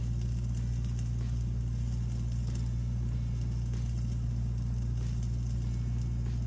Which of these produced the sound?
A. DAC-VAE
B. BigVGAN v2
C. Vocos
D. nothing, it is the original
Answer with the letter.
D